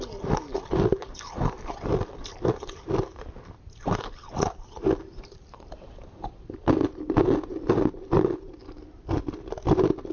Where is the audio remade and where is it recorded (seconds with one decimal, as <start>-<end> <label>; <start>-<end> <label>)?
0.0-1.0 recorded; 1.0-3.8 remade; 3.8-10.1 recorded